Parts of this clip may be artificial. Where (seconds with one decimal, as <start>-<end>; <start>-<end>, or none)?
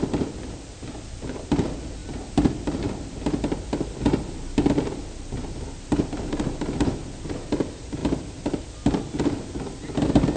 none